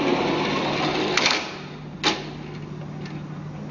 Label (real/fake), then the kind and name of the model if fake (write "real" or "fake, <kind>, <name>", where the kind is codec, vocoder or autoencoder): real